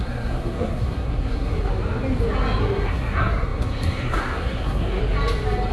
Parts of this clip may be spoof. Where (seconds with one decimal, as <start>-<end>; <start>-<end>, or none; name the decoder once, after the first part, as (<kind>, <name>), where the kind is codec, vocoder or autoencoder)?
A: 0.0-1.7 (codec, SNAC); 2.6-5.0